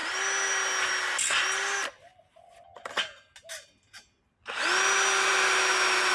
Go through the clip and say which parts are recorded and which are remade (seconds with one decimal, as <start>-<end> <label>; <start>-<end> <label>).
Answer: 0.0-6.1 recorded